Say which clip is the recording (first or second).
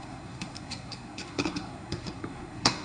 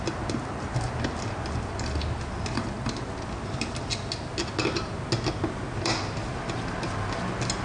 second